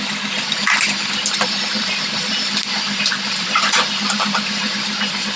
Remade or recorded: remade